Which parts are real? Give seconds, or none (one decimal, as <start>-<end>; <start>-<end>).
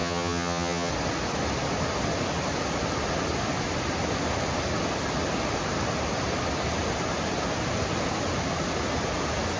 0.9-9.6